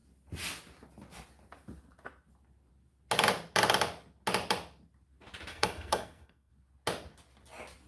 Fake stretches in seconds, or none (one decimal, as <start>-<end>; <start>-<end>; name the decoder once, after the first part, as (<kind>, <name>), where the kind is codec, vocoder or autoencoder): 5.5-6.5 (codec, SNAC)

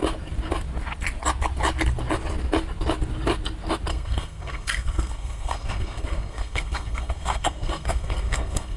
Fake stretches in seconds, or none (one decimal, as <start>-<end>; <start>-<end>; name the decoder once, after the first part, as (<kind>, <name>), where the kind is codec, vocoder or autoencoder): 3.9-8.8 (codec, SNAC)

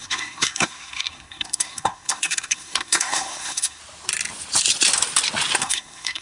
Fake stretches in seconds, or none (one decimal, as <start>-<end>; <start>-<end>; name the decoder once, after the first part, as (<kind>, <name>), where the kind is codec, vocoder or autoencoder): 0.0-3.8 (codec, SNAC); 5.6-6.2

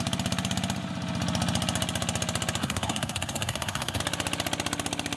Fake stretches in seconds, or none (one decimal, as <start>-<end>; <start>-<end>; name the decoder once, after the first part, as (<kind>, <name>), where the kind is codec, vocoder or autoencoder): 2.6-4.0 (codec, SNAC)

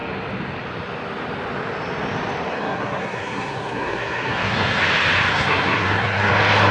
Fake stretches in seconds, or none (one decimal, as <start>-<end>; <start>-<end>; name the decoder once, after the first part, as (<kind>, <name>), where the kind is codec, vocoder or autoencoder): 2.5-4.8 (codec, SNAC); 5.3-6.3

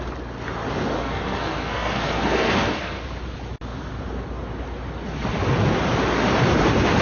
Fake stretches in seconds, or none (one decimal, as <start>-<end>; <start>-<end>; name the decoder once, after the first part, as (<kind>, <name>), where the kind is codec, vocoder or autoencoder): 1.0-3.0 (codec, SNAC)